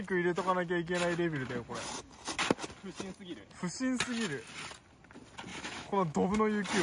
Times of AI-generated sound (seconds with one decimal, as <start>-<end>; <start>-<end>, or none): 5.5-6.3